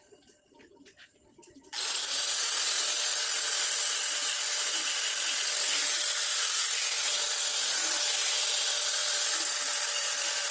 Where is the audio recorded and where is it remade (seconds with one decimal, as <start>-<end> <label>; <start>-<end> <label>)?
0.0-10.5 recorded